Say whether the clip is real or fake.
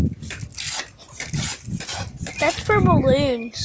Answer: real